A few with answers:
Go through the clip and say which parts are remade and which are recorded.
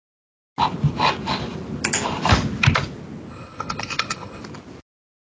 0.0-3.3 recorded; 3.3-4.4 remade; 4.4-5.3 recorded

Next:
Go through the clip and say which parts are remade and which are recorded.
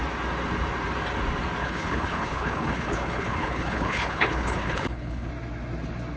0.0-1.6 recorded; 1.6-5.3 remade; 5.3-6.2 recorded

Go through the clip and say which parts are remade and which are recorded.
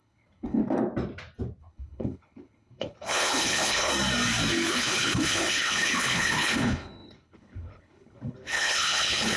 0.0-0.6 remade; 0.6-1.6 recorded; 1.6-3.9 remade; 3.9-4.7 recorded; 4.7-9.4 remade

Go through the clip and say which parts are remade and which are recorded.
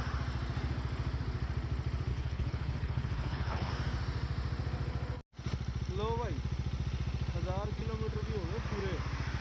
0.0-2.1 recorded; 2.1-3.7 remade; 3.7-9.4 recorded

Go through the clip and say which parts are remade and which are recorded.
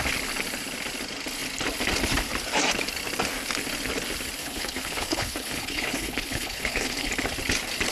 0.0-4.4 recorded; 4.4-7.1 remade; 7.1-7.9 recorded